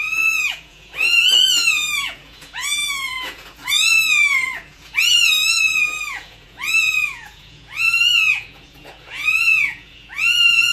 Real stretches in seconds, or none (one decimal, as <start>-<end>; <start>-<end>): none